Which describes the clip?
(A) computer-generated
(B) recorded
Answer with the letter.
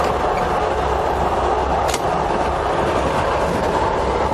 B